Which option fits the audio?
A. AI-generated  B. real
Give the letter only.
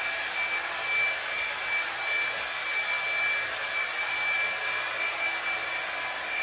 B